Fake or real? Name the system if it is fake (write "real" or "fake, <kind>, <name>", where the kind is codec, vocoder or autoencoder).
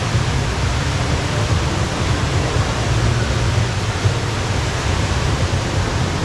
real